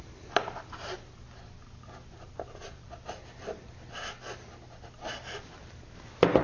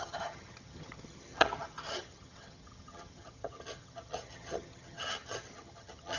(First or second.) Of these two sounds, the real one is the first